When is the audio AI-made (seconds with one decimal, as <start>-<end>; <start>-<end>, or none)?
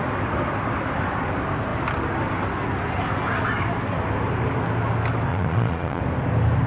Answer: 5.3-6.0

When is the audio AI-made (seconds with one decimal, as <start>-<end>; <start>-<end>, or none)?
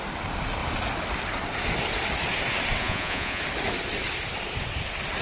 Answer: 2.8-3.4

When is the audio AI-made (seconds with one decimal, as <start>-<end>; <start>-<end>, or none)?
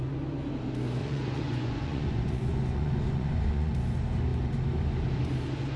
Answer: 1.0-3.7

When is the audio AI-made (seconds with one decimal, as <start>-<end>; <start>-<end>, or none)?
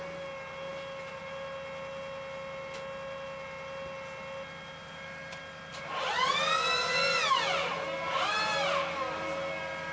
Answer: none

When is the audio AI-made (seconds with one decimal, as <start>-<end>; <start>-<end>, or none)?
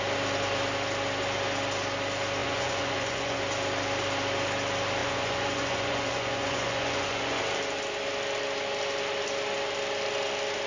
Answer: 2.4-3.4; 5.0-7.4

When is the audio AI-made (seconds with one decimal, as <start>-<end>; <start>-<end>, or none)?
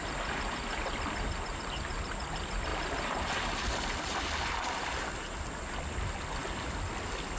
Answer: none